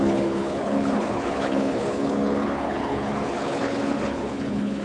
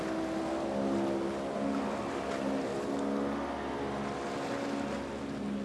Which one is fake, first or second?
first